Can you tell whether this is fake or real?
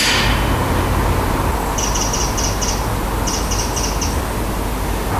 real